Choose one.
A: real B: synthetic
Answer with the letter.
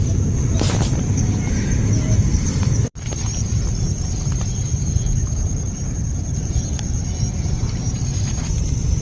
B